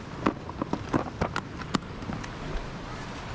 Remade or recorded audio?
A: recorded